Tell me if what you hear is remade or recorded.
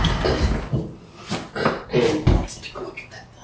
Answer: recorded